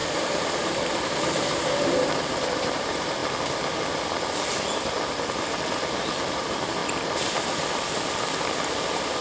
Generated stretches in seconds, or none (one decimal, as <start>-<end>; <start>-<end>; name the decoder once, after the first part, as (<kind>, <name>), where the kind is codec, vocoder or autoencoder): 0.0-3.2 (vocoder, BigVGAN v2); 6.2-6.8; 8.7-9.2